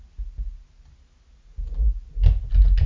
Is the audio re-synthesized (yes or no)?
no